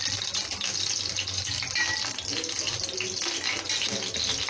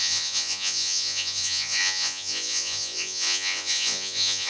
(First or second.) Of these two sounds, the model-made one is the second